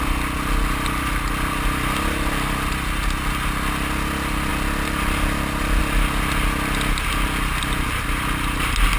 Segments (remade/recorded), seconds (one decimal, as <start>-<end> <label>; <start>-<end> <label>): 0.0-9.0 recorded